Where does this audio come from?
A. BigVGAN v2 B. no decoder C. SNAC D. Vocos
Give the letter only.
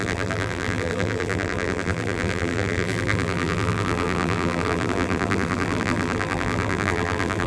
A